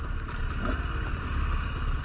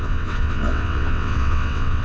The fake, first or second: second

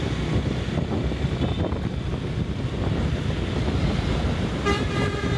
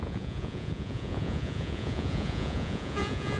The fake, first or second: second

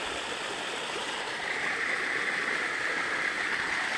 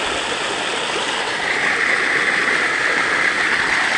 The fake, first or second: first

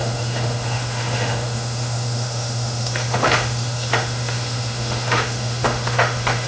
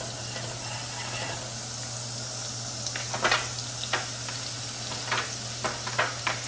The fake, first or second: first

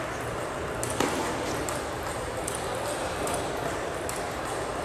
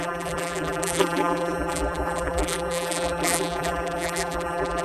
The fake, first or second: second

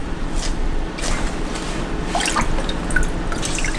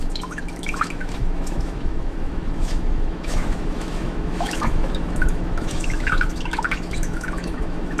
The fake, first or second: second